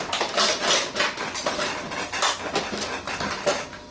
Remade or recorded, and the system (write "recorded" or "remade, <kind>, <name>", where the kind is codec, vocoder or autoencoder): recorded